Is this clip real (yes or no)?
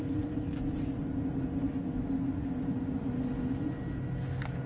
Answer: yes